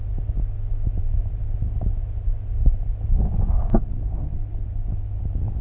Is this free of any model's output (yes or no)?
yes